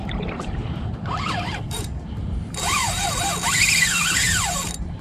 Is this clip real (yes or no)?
no